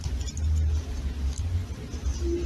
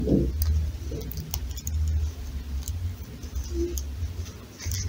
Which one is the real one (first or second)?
second